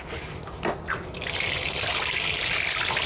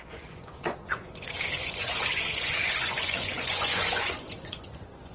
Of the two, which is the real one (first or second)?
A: first